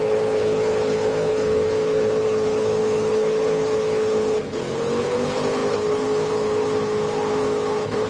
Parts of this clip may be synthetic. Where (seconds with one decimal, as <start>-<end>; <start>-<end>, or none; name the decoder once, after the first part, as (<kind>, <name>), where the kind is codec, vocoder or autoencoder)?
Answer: 0.0-8.1 (codec, HILCodec)